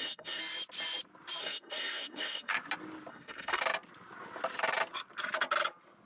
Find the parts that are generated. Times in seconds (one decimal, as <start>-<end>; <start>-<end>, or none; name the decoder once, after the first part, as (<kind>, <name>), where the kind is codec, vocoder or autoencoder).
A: 0.0-0.4 (codec, SNAC); 1.4-2.5; 3.1-3.6